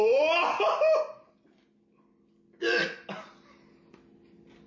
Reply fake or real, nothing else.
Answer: real